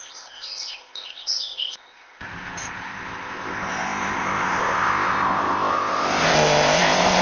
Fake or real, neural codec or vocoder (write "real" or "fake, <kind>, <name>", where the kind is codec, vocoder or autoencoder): fake, codec, ZipCodec